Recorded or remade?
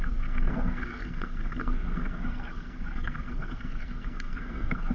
remade